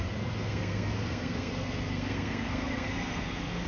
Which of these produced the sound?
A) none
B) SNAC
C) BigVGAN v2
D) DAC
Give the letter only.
B